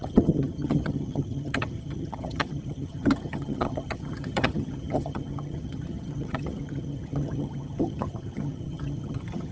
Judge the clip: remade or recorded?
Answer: remade